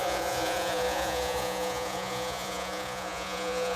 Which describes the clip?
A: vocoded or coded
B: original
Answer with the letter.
A